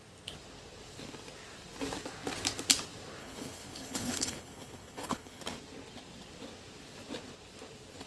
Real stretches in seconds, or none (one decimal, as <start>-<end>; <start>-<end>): 0.0-3.2; 5.4-8.1